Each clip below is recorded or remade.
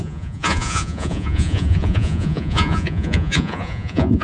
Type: remade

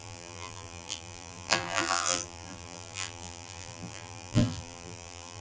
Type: remade